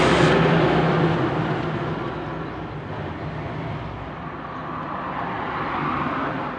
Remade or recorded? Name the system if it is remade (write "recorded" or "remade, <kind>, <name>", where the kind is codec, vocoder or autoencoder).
recorded